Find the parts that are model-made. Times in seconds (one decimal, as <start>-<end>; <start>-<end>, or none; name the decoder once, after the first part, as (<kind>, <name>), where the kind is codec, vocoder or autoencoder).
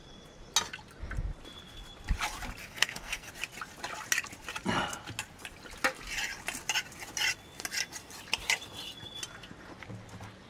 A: 2.6-3.3 (codec, SNAC)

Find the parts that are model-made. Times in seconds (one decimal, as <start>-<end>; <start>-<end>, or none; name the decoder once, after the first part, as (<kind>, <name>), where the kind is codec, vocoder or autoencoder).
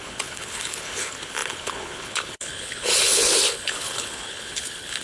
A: 0.0-5.0 (codec, HILCodec)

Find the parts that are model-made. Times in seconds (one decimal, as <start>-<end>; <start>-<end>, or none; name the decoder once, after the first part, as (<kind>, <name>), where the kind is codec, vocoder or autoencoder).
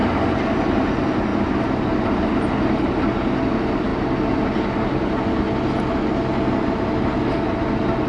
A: none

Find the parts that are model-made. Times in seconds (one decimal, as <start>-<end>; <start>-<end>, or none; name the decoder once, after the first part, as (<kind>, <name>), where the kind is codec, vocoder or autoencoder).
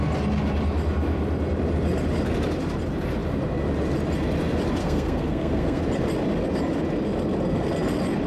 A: 4.8-5.8 (codec, SNAC)